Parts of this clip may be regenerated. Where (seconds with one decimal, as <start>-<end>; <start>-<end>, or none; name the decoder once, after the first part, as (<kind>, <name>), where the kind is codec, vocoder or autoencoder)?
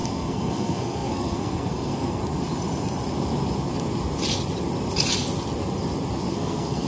0.0-2.2 (codec, SNAC); 6.3-6.9